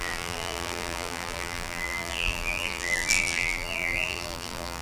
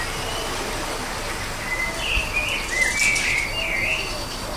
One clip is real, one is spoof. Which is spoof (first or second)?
first